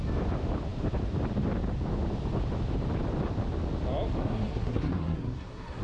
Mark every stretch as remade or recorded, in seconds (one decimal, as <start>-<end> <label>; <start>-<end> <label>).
0.0-4.2 recorded; 4.2-5.8 remade